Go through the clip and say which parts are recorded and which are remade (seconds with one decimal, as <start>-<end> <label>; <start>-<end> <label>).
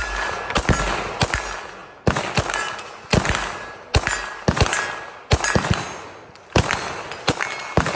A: 0.0-8.0 recorded